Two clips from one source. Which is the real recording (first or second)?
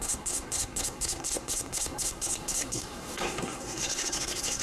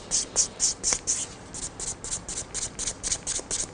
second